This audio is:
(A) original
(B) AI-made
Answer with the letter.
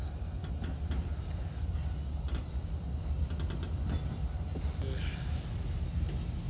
A